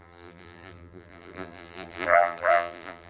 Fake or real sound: fake